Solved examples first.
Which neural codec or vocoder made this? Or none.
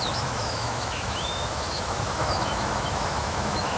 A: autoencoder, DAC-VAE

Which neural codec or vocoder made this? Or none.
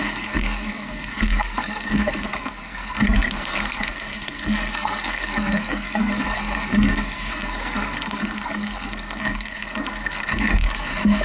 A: codec, SNAC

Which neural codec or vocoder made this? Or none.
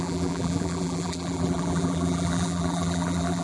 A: vocoder, BigVGAN v2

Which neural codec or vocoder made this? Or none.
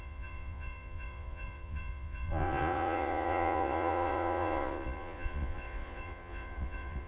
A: vocoder, Vocos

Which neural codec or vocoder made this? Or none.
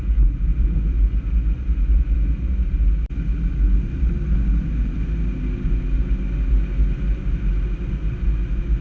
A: none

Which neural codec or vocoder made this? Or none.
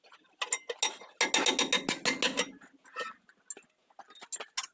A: none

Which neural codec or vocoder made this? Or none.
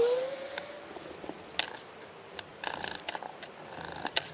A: none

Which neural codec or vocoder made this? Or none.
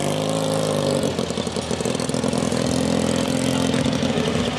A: none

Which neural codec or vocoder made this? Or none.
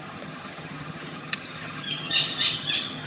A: vocoder, HiFi-GAN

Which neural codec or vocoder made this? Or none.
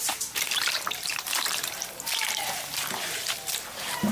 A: vocoder, BigVGAN v2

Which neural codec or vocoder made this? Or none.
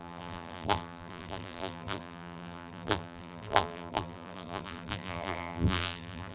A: vocoder, BigVGAN v2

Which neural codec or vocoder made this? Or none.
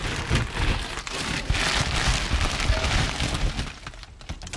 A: none